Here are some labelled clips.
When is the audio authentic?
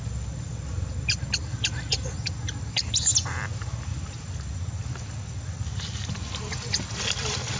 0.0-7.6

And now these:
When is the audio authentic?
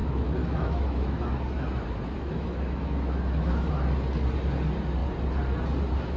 3.7-6.2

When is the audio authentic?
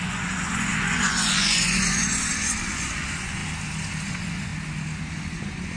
3.4-4.1; 4.5-5.1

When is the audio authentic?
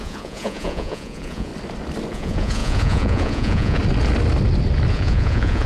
1.5-2.1; 3.8-4.9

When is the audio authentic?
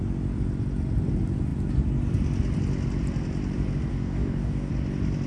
0.0-3.9; 4.7-5.3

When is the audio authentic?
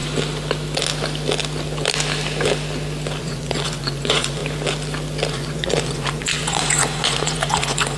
0.0-3.2; 4.4-5.3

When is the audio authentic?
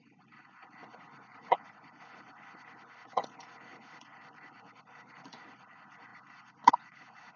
none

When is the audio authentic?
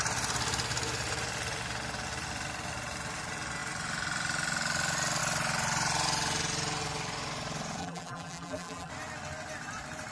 0.0-7.8; 8.9-10.1